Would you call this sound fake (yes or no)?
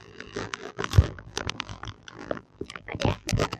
yes